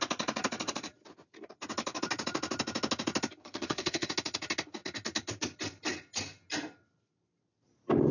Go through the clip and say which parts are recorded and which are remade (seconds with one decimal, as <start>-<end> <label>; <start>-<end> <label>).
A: 0.0-3.4 recorded; 3.4-4.1 remade; 4.1-8.1 recorded